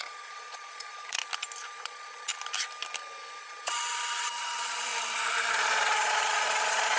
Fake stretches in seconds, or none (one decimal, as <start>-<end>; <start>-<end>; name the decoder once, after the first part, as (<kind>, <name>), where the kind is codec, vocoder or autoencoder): 0.0-1.2 (vocoder, Vocos); 1.8-2.3; 3.4-4.9; 5.5-7.0